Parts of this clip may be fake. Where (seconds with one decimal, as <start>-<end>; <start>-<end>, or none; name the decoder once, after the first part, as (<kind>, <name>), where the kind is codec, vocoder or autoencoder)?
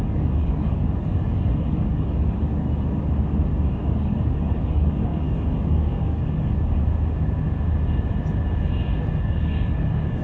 0.0-2.5 (codec, DAC); 3.7-6.8; 9.2-10.2